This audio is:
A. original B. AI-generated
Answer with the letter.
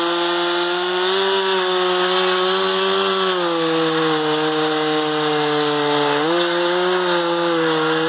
A